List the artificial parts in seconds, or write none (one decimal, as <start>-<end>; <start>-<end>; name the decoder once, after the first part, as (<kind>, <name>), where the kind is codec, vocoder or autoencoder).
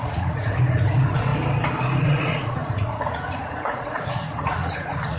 0.0-1.3 (vocoder, Vocos); 2.0-5.2